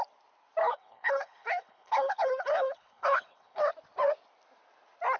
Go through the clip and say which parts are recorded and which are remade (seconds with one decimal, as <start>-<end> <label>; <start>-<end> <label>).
0.0-0.6 recorded; 0.6-3.7 remade; 3.7-5.2 recorded